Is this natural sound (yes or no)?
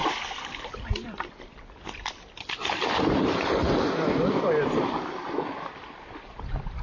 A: no